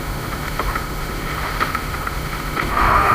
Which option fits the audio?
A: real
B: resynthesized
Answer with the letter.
B